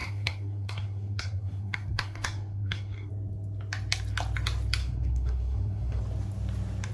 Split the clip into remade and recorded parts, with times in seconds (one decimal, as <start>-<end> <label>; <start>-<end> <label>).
0.0-3.1 remade; 3.1-4.8 recorded; 4.8-6.0 remade; 6.0-6.9 recorded